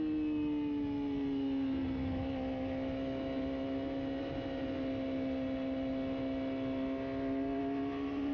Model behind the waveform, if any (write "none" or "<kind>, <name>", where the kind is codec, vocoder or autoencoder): none